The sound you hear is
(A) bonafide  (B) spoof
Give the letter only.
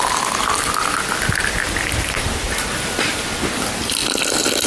A